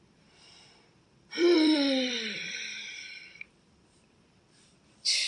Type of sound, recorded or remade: remade